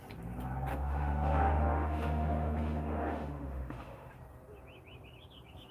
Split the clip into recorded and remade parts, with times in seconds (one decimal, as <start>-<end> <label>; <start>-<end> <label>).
0.0-0.7 recorded; 0.7-4.1 remade; 4.1-5.7 recorded